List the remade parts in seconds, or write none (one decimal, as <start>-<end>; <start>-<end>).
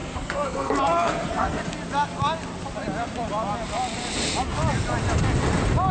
0.0-1.6